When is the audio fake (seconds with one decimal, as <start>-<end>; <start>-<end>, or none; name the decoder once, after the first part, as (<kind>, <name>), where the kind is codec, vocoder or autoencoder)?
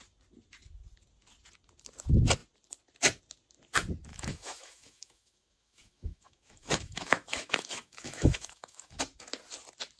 4.1-9.0 (autoencoder, DAC-VAE)